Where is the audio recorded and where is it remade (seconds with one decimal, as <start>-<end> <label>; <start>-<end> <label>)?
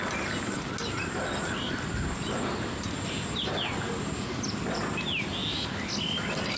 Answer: 0.0-6.6 recorded